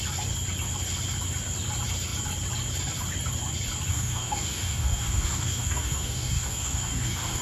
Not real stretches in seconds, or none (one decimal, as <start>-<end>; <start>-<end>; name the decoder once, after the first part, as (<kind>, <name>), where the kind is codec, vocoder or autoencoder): 3.9-7.4 (codec, DAC)